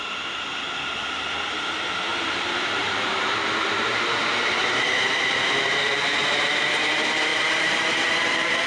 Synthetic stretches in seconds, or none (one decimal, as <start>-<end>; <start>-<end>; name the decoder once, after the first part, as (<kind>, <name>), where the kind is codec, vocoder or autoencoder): 2.1-6.5 (vocoder, BigVGAN v2); 7.3-8.0